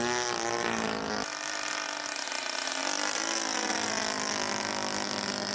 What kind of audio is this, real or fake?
real